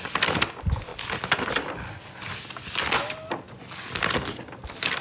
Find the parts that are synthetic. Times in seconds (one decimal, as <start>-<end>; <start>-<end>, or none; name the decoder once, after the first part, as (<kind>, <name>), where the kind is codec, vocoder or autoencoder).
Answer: none